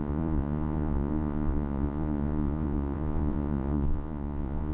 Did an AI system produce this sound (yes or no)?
yes